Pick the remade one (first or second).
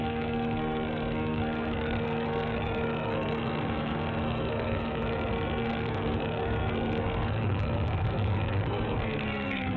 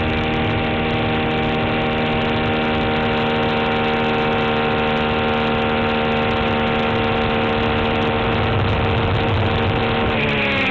first